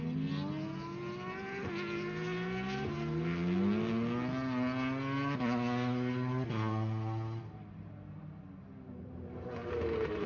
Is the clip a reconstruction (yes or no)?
no